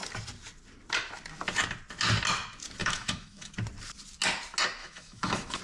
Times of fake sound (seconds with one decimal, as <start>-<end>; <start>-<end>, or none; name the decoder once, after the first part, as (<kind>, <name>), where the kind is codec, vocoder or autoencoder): 2.8-3.5 (autoencoder, DAC-VAE); 4.8-5.6